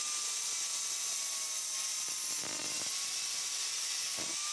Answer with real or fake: real